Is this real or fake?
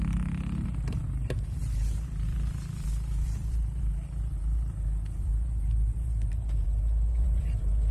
fake